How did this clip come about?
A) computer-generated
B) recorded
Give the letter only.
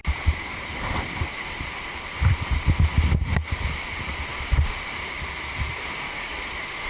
B